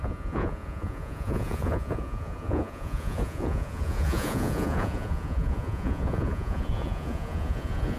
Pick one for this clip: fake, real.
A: fake